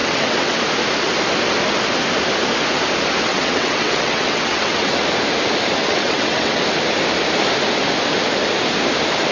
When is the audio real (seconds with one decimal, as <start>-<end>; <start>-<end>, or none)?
0.6-3.3; 5.0-5.8; 6.6-9.3